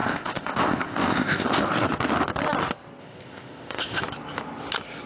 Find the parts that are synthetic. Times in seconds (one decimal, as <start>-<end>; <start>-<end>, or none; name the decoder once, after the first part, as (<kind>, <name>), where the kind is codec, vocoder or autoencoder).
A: 0.0-1.6 (codec, ZipCodec); 3.0-4.0